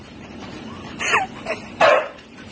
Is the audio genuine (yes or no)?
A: no